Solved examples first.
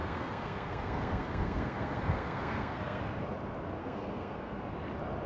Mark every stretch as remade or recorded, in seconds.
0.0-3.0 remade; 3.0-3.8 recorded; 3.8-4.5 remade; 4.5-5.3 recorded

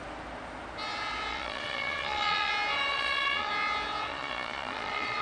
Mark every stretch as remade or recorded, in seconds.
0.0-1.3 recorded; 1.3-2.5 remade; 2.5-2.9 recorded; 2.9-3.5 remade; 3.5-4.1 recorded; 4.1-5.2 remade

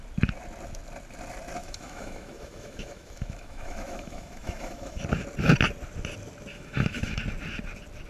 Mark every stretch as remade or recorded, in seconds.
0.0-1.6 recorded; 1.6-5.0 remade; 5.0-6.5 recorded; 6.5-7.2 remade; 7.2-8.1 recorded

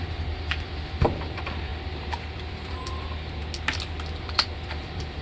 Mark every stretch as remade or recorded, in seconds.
0.0-3.4 remade; 3.4-4.2 recorded; 4.2-5.2 remade

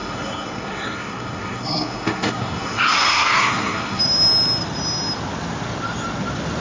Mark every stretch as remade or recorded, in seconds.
0.0-4.0 remade; 4.0-6.6 recorded